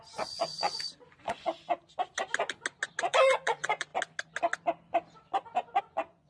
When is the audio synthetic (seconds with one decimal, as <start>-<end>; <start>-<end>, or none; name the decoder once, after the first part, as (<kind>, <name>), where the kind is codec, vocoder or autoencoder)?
0.0-1.5 (vocoder, Vocos); 3.0-3.9; 5.8-6.3